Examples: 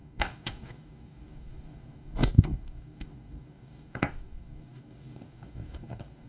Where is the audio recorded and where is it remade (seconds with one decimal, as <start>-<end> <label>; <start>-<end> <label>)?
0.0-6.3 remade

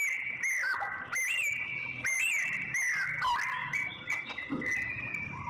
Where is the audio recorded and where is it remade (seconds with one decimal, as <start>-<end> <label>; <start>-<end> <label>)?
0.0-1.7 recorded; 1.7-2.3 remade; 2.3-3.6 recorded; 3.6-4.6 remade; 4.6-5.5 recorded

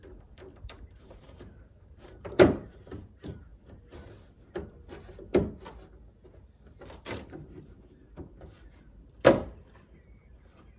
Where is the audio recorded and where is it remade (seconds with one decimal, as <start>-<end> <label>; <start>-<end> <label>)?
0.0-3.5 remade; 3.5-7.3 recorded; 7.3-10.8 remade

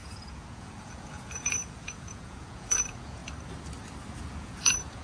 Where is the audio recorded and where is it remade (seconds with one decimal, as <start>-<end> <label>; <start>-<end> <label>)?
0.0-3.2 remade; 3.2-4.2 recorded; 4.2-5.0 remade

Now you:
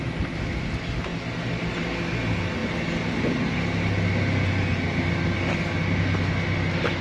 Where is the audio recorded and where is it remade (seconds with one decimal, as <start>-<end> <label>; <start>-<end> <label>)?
0.0-7.0 recorded

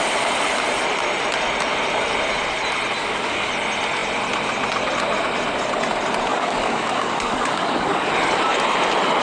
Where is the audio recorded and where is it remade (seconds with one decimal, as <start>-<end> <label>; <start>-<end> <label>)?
0.0-3.0 recorded; 3.0-3.5 remade; 3.5-6.3 recorded; 6.3-8.1 remade; 8.1-9.2 recorded

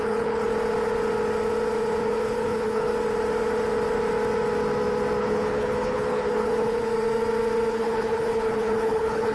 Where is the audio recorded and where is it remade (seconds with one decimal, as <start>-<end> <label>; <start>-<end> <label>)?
0.0-0.5 remade; 0.5-2.0 recorded; 2.0-2.9 remade; 2.9-5.2 recorded; 5.2-6.9 remade; 6.9-7.7 recorded; 7.7-9.3 remade

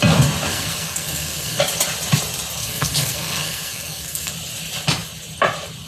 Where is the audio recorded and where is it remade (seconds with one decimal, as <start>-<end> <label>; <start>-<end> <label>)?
0.0-0.5 recorded; 0.5-1.6 remade; 1.6-2.6 recorded; 2.6-4.3 remade; 4.3-5.9 recorded